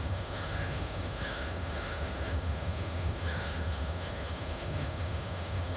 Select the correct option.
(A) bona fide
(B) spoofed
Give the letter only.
B